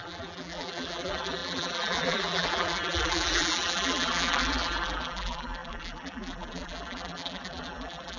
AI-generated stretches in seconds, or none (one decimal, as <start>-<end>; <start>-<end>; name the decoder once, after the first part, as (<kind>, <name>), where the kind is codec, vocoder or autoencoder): 0.0-8.2 (vocoder, BigVGAN v2)